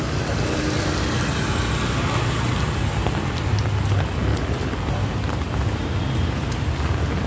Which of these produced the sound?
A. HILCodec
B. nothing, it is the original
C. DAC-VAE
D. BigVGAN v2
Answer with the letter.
B